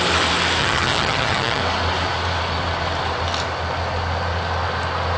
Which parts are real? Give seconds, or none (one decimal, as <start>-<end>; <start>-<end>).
0.0-0.6; 1.6-5.2